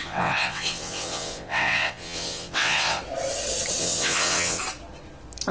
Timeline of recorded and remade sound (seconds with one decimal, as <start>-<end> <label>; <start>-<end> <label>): 0.0-3.0 remade; 3.0-3.8 recorded; 3.8-4.6 remade; 4.6-5.5 recorded